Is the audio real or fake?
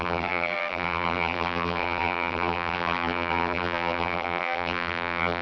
fake